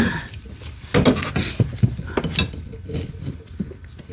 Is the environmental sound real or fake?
real